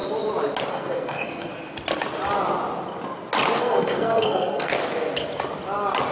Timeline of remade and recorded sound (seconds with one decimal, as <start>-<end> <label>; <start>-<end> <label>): 0.0-0.7 recorded; 0.7-1.5 remade; 1.5-3.6 recorded; 3.6-4.7 remade; 4.7-6.1 recorded